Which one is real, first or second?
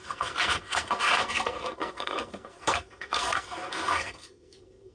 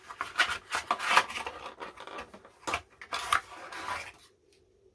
second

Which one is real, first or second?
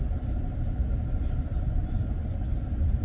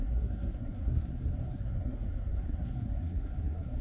first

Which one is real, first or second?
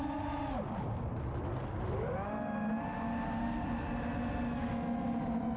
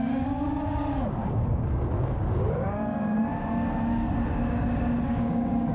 first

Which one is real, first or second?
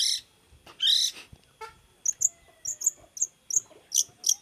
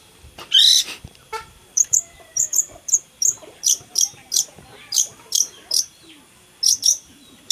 first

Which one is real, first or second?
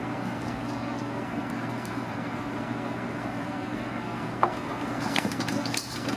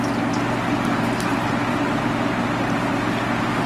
second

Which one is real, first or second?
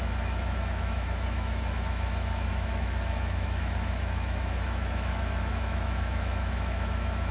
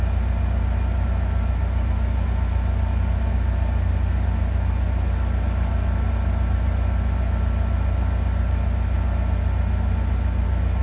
second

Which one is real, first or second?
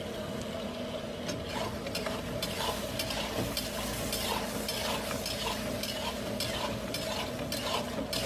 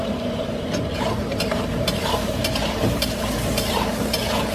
first